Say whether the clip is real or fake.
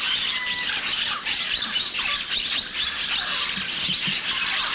real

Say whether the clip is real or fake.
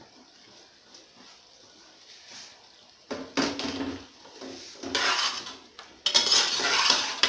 real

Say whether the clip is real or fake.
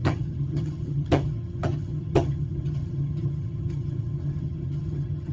fake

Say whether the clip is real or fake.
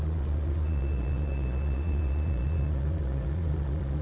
fake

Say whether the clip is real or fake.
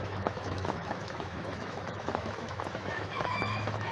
fake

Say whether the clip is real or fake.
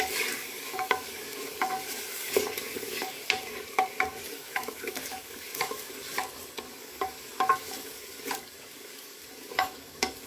fake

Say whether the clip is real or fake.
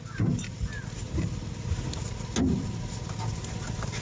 real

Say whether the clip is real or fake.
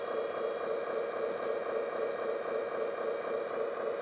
real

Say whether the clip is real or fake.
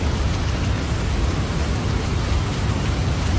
real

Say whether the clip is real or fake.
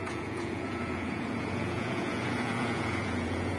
fake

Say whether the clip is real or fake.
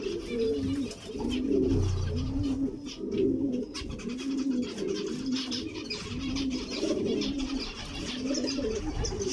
real